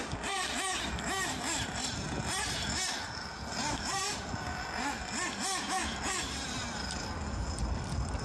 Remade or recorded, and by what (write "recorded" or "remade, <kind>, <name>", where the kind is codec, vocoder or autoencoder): recorded